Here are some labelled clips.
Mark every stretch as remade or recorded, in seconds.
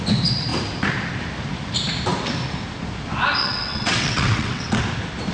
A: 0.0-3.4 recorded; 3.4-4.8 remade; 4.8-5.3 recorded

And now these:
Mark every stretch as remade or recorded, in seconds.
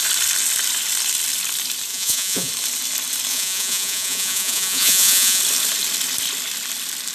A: 0.0-1.9 recorded; 1.9-2.5 remade; 2.5-3.3 recorded; 3.3-5.4 remade; 5.4-7.1 recorded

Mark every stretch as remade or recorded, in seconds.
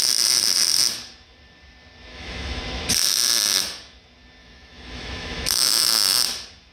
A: 0.0-2.1 recorded; 2.1-2.6 remade; 2.6-4.4 recorded; 4.4-6.2 remade; 6.2-6.7 recorded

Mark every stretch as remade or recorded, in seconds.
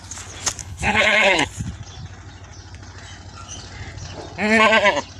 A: 0.0-0.6 recorded; 0.6-1.5 remade; 1.5-5.2 recorded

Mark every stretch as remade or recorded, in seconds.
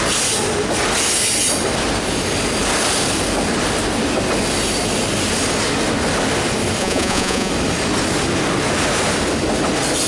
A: 0.0-6.8 recorded; 6.8-7.5 remade; 7.5-10.1 recorded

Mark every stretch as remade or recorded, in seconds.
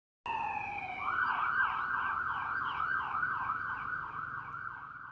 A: 0.0-5.1 recorded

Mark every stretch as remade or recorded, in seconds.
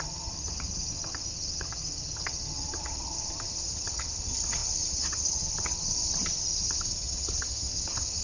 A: 0.0-8.2 remade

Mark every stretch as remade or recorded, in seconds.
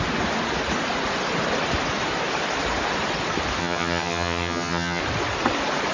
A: 0.0-3.6 recorded; 3.6-5.0 remade; 5.0-5.9 recorded